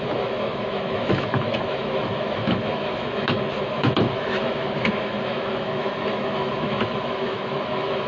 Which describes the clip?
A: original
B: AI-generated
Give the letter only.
B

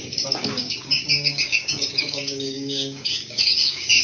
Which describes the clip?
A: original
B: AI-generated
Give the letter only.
B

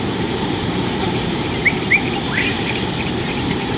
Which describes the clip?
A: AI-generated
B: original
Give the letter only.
A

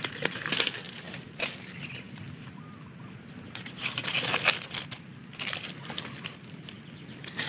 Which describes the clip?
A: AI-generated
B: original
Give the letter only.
B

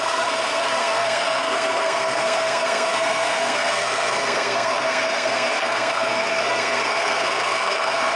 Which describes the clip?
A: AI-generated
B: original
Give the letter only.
A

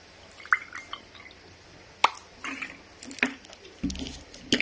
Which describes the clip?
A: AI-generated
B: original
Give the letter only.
B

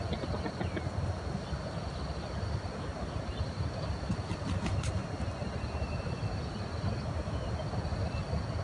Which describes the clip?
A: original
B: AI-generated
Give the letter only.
A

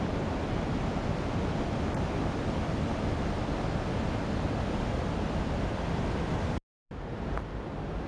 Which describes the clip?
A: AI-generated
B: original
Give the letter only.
B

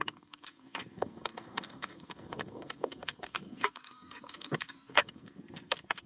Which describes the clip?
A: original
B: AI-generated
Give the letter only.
B